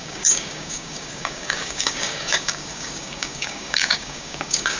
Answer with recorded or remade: remade